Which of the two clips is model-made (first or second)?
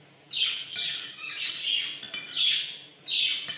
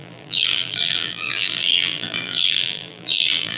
second